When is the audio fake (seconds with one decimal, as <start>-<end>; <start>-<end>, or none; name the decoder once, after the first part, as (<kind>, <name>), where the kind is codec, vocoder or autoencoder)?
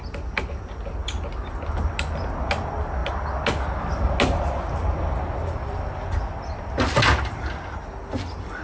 none